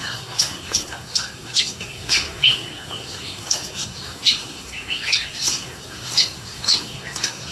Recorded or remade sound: remade